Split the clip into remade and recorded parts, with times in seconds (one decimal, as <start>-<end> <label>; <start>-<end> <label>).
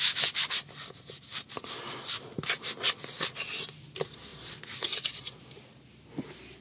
0.0-6.6 recorded